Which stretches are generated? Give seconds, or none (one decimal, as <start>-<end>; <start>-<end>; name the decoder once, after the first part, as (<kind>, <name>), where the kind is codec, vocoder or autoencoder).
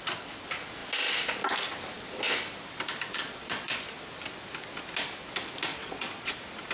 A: 3.1-3.8 (vocoder, Vocos); 5.7-6.3